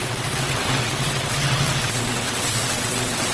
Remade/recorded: remade